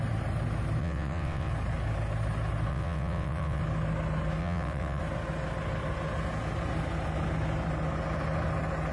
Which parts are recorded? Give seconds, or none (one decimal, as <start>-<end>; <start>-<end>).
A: 0.0-0.8; 1.5-2.7; 3.6-4.4; 5.0-8.9